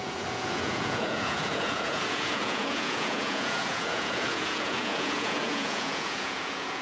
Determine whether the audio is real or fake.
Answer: fake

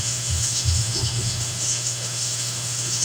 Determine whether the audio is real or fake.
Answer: fake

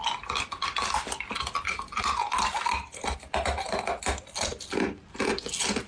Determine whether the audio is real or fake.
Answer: real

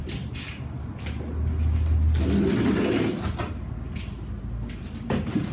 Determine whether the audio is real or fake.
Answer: real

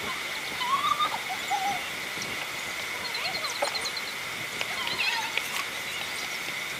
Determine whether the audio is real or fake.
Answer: real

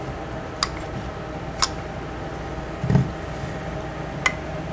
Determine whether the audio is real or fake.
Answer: real